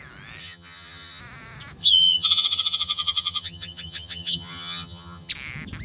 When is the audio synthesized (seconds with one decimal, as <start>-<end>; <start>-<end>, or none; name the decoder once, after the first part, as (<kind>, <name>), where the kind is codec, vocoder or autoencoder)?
0.4-1.2 (vocoder, HiFi-GAN); 1.8-5.3